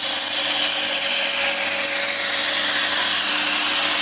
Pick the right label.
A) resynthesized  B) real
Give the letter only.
B